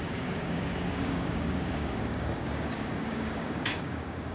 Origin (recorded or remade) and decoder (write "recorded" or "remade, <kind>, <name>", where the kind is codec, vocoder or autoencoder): remade, codec, DAC